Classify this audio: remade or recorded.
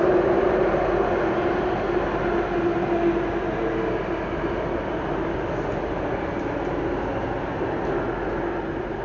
recorded